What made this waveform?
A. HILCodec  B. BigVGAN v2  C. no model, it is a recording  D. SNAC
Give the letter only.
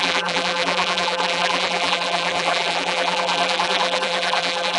B